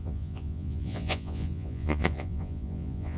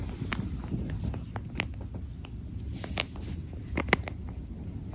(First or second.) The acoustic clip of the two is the second